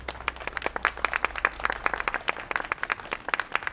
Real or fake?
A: real